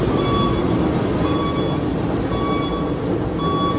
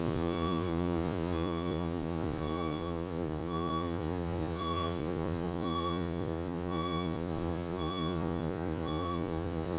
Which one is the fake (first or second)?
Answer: second